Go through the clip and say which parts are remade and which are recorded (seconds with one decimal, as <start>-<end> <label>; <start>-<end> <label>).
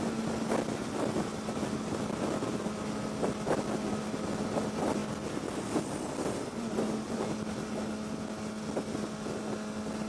0.0-10.1 recorded